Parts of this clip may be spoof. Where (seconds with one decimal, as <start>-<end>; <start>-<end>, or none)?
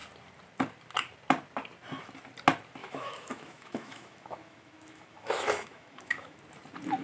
2.8-6.4